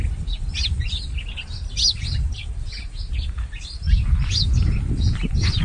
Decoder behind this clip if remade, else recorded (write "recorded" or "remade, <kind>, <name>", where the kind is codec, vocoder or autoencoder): recorded